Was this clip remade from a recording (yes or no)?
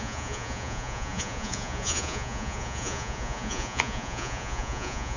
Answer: yes